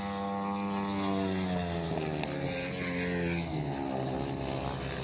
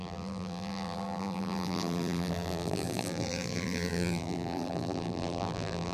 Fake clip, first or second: second